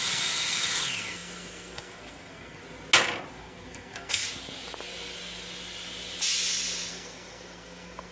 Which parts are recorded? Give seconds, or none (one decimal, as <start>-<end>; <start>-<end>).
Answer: 2.6-3.3; 4.2-6.9